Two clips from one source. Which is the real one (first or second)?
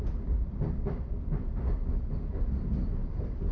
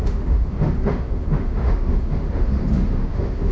first